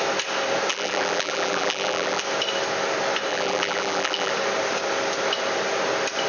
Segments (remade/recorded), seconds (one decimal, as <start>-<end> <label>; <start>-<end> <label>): 0.0-0.7 recorded; 0.7-2.2 remade; 2.2-3.3 recorded; 3.3-4.3 remade; 4.3-6.3 recorded